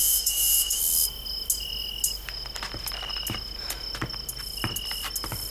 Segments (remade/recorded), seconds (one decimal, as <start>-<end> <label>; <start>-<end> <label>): 0.0-0.8 remade; 0.8-5.5 recorded